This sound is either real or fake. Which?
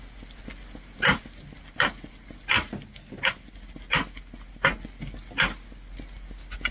real